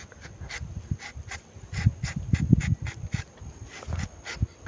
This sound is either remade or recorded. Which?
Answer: recorded